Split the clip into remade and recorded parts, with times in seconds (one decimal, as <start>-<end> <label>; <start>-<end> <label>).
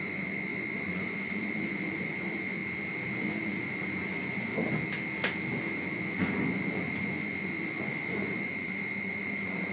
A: 0.0-2.6 remade; 2.6-3.2 recorded; 3.2-4.5 remade; 4.5-5.6 recorded; 5.6-9.7 remade